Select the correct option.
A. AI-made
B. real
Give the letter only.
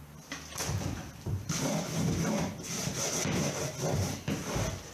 B